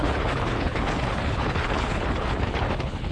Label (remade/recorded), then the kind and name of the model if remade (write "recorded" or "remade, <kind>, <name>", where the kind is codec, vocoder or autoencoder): remade, codec, HILCodec